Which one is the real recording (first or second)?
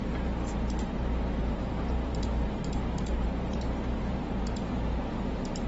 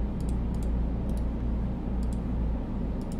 second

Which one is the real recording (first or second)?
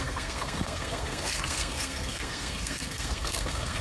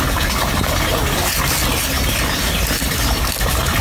second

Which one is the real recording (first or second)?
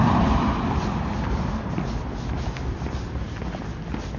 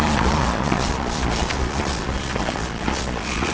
first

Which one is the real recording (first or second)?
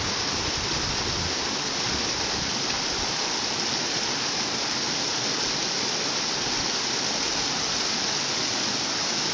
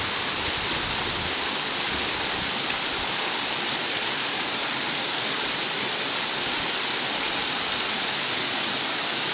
first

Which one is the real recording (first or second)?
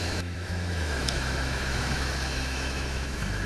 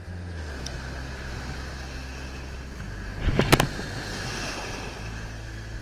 second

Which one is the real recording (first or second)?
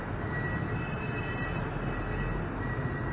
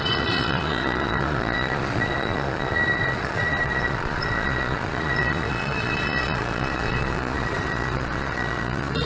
first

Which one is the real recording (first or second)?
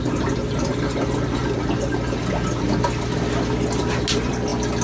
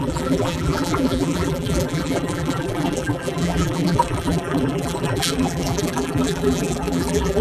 first